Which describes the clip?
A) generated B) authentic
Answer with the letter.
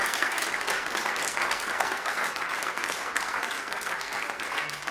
A